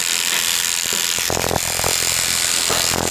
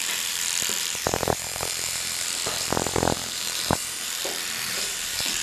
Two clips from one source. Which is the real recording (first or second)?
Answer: first